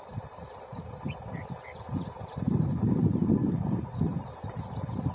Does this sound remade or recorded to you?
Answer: remade